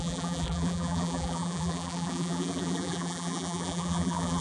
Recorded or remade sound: remade